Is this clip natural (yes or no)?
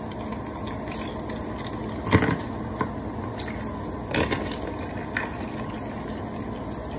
yes